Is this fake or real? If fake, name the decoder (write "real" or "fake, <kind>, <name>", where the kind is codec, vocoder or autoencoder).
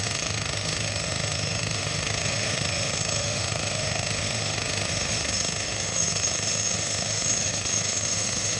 fake, autoencoder, DAC-VAE